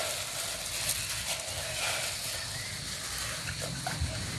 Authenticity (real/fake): real